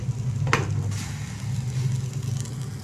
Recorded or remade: recorded